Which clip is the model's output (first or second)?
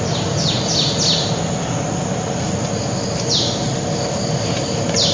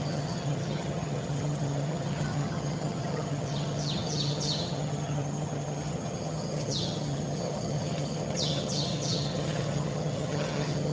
second